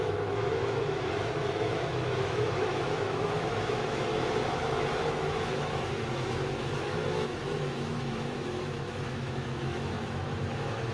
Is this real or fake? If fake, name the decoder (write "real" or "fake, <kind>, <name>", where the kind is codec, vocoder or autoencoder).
fake, autoencoder, DAC-VAE